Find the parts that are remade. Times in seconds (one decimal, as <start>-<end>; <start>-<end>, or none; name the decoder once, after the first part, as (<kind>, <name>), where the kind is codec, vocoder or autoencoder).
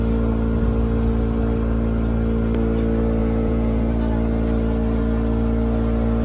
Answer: 3.2-3.9 (vocoder, Vocos)